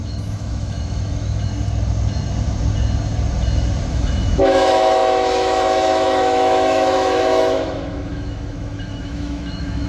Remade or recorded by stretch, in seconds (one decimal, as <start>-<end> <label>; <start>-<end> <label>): 0.0-1.5 remade; 1.5-3.9 recorded; 3.9-9.9 remade